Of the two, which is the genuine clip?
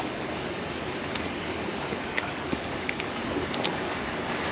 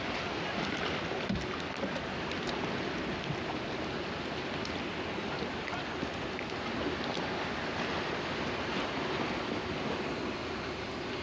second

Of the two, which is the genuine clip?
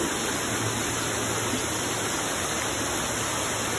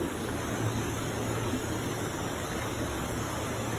first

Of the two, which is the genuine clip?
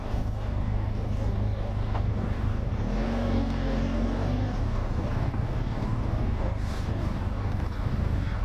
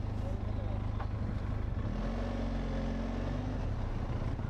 second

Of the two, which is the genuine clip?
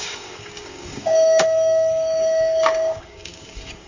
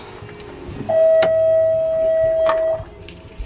second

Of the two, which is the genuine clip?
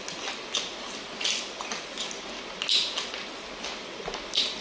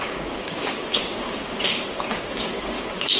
first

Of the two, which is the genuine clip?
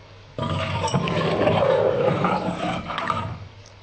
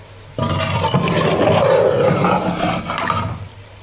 second